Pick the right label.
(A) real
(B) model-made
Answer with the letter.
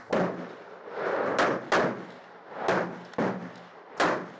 A